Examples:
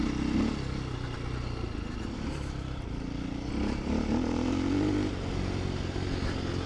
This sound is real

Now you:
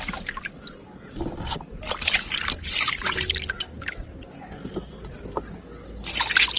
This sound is real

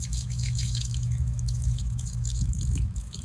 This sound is fake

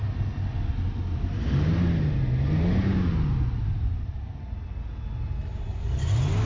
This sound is real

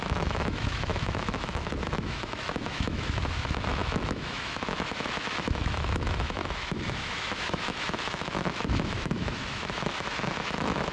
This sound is fake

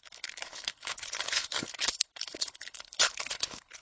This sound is fake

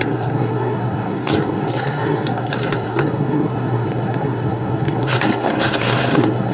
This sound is fake